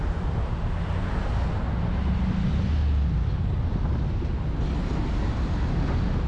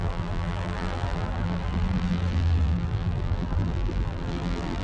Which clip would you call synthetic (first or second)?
second